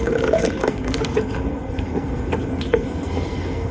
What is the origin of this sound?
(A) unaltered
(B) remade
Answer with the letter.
B